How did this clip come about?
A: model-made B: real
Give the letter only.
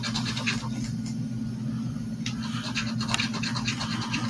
B